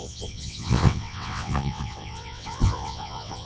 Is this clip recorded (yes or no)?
no